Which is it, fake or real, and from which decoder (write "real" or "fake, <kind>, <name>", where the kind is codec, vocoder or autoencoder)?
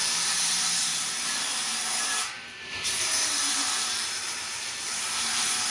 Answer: fake, vocoder, BigVGAN v2